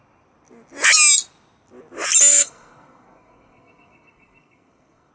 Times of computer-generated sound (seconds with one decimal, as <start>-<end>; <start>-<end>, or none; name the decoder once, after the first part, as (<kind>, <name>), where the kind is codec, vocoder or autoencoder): 2.3-5.1 (codec, SNAC)